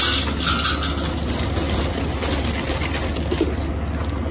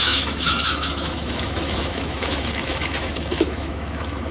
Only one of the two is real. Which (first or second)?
first